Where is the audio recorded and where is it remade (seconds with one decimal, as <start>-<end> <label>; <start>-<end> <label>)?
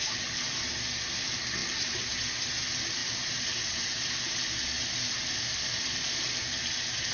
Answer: 0.0-1.6 recorded; 1.6-2.3 remade; 2.3-3.0 recorded; 3.0-4.1 remade; 4.1-7.1 recorded